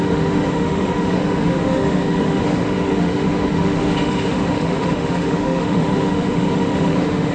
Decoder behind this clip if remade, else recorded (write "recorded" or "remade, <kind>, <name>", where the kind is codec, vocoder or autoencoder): remade, autoencoder, DAC-VAE